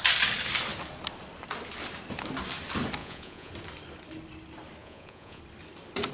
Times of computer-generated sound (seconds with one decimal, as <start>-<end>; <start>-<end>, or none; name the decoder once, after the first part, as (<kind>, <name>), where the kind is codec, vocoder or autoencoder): 3.0-3.5 (vocoder, Vocos); 4.8-5.4